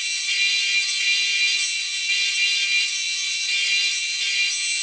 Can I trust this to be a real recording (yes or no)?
yes